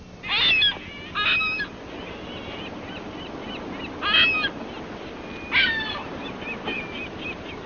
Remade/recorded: recorded